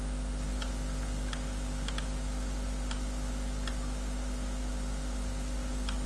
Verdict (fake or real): real